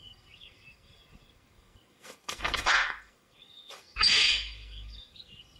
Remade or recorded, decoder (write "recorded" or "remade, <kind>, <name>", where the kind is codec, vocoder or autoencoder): remade, codec, SNAC